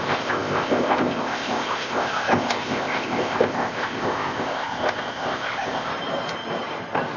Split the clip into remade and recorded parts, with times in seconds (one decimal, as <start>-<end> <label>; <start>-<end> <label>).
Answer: 0.0-5.9 remade; 5.9-7.2 recorded